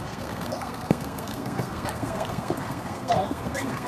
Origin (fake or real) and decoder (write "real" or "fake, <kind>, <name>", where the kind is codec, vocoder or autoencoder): fake, codec, SNAC